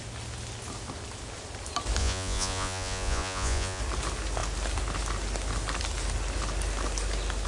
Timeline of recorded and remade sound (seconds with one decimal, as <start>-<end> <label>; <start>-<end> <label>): 0.0-2.0 recorded; 2.0-3.8 remade; 3.8-7.5 recorded